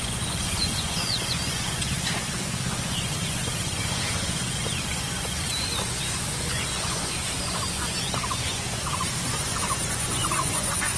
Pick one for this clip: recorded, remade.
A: remade